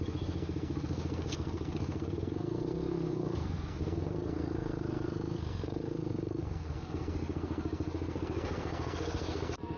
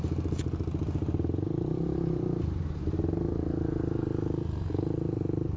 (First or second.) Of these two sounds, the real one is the second